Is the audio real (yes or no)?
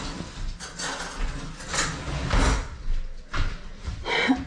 yes